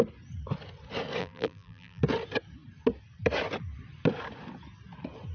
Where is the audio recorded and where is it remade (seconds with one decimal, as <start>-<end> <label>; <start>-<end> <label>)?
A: 0.0-1.2 recorded; 1.2-2.0 remade; 2.0-5.3 recorded